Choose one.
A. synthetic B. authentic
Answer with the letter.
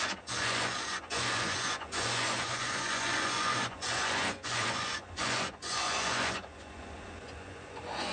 A